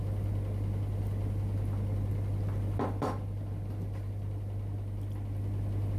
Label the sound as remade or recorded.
recorded